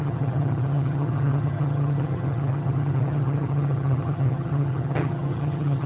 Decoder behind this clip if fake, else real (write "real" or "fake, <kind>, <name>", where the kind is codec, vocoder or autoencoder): fake, vocoder, HiFi-GAN